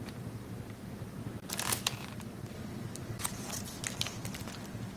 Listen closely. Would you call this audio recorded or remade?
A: recorded